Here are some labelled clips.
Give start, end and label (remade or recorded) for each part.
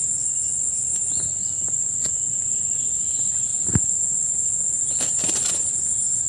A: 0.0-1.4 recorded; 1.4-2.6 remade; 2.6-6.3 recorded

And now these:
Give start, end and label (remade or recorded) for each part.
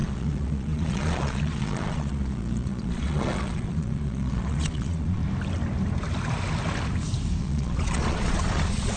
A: 0.0-5.2 remade; 5.2-7.4 recorded; 7.4-9.0 remade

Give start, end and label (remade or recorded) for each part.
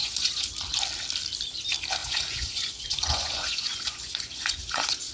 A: 0.0-0.5 remade; 0.5-2.0 recorded; 2.0-5.1 remade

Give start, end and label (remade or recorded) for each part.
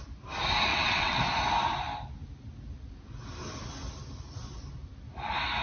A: 0.0-0.7 recorded; 0.7-1.2 remade; 1.2-5.6 recorded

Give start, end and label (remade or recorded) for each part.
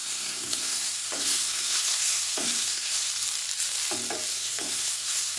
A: 0.0-3.1 remade; 3.1-4.3 recorded; 4.3-5.4 remade